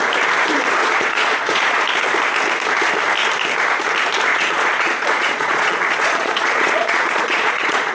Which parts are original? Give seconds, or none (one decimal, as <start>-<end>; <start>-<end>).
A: 0.0-0.8; 1.8-4.3